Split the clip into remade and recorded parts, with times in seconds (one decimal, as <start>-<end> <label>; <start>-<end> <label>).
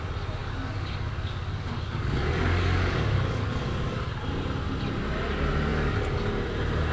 0.0-0.4 recorded; 0.4-4.1 remade; 4.1-5.7 recorded; 5.7-6.3 remade; 6.3-6.9 recorded